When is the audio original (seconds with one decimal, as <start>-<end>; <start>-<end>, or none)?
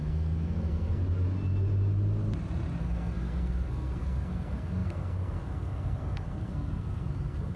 1.0-2.8